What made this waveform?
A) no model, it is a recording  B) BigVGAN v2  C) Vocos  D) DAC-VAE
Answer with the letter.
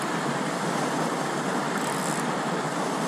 A